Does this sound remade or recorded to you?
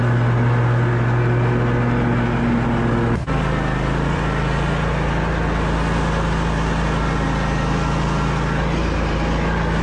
recorded